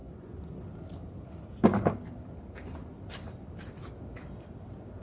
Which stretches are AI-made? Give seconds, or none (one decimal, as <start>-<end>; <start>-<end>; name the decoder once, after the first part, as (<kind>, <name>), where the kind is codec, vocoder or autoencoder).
0.0-0.6 (vocoder, Vocos)